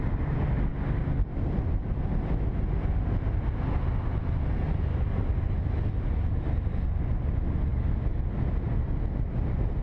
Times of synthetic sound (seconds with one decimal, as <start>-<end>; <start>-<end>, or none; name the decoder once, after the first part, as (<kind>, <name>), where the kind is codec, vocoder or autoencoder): none